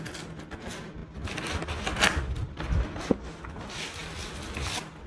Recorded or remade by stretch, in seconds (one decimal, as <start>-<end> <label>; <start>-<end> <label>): 0.0-5.1 recorded